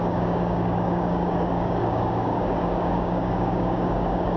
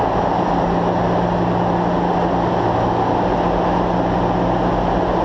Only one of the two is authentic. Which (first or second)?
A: second